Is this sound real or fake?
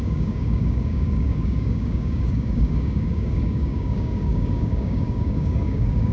fake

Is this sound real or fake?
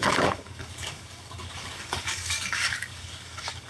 fake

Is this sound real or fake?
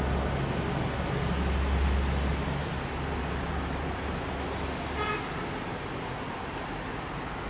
real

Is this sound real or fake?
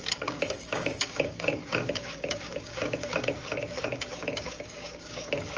fake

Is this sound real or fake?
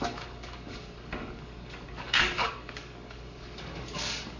fake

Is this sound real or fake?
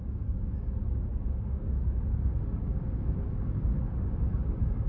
fake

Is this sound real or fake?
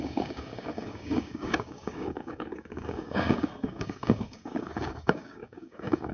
fake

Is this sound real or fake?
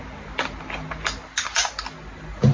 real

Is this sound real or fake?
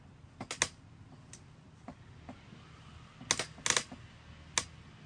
real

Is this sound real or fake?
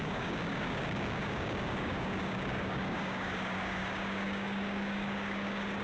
fake